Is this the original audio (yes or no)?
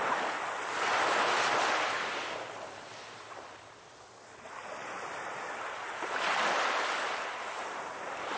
yes